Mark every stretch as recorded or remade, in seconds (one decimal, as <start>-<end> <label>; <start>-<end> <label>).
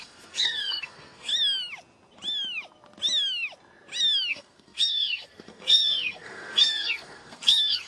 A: 0.0-1.3 remade; 1.3-4.3 recorded; 4.3-7.9 remade